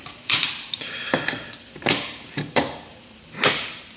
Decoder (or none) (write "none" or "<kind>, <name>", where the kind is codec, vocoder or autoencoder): vocoder, BigVGAN v2